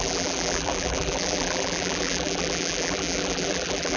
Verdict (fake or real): fake